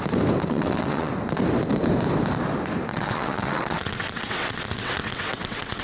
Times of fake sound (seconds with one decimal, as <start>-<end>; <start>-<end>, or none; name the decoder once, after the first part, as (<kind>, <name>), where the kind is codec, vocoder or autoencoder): 0.4-1.1 (vocoder, WaveNeXt); 2.9-5.8